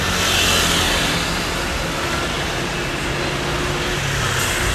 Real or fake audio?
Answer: real